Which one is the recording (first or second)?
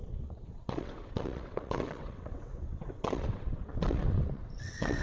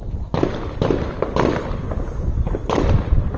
second